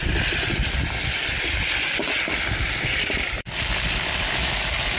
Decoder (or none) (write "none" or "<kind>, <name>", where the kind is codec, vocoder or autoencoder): none